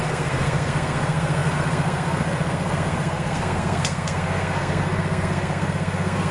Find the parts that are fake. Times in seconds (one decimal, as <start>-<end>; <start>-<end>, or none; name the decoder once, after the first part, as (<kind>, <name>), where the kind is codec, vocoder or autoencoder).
0.0-6.3 (codec, SNAC)